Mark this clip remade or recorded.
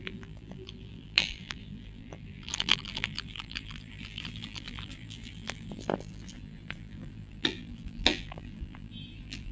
remade